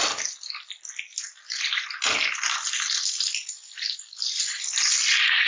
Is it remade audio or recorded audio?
recorded